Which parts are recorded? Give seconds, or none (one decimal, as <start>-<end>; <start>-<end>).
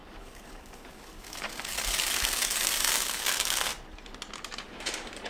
3.7-5.3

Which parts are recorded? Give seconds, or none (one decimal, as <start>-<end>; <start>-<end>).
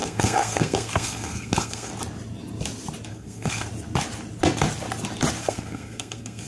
1.9-3.1; 3.7-5.4